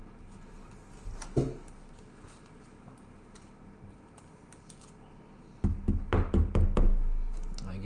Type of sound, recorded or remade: recorded